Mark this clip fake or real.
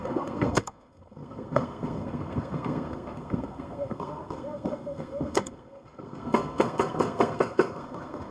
fake